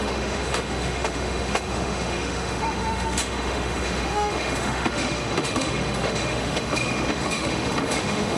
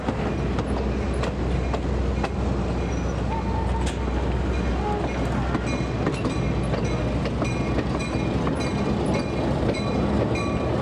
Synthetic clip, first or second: first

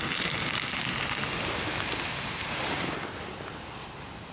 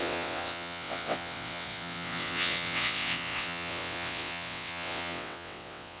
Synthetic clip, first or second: second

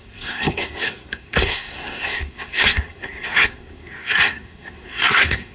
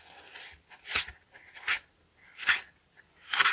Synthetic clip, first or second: first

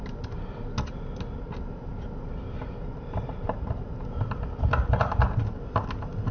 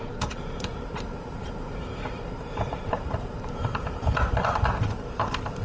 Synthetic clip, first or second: second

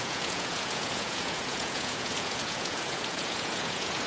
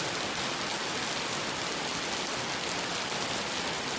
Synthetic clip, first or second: first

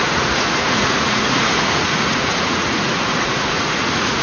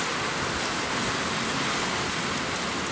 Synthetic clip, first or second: first